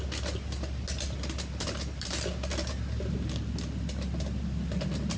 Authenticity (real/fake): real